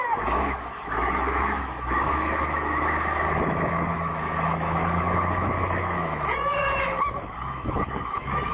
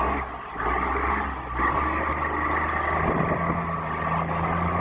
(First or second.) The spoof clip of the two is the first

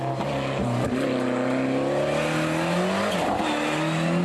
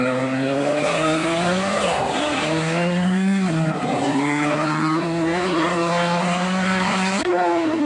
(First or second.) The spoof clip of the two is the second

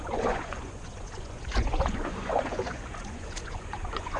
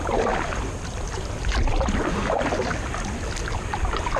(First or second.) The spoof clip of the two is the first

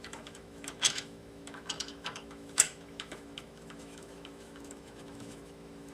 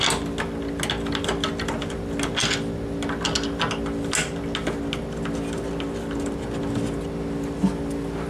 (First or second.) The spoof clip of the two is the first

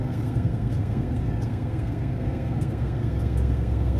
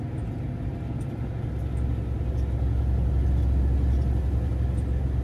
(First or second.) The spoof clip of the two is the first